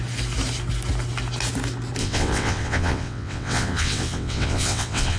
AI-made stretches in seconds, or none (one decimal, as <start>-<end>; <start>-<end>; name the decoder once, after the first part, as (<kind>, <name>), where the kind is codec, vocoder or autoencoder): 2.0-5.2 (vocoder, WaveNeXt)